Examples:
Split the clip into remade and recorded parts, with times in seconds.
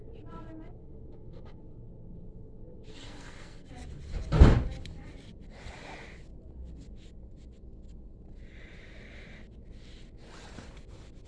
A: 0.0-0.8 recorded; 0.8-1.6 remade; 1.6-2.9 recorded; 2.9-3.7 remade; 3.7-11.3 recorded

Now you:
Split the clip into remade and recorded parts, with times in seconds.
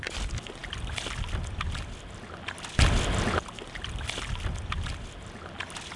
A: 0.0-6.0 recorded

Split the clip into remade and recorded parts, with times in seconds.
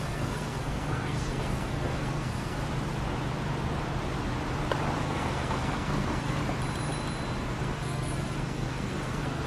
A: 0.0-2.6 remade; 2.6-5.0 recorded; 5.0-6.4 remade; 6.4-7.6 recorded; 7.6-9.5 remade